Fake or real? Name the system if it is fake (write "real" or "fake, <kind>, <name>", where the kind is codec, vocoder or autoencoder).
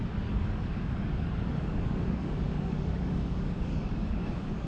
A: fake, codec, DAC